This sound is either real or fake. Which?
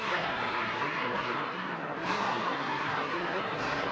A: fake